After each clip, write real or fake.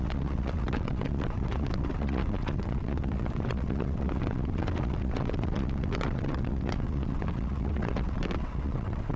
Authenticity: fake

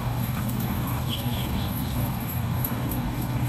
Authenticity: fake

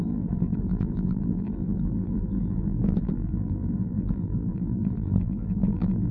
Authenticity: fake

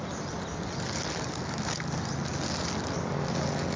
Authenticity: real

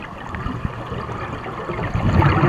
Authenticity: real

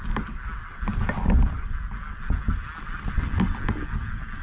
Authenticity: real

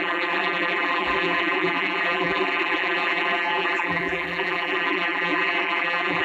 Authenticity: fake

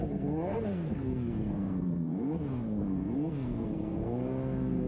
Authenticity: fake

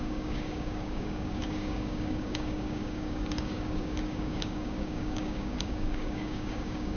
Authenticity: fake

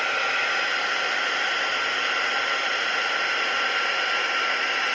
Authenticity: real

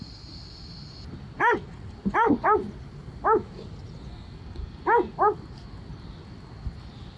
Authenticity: real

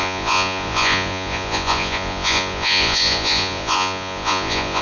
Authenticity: fake